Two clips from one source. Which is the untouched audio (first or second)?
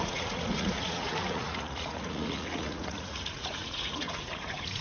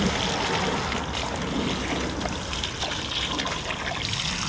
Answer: second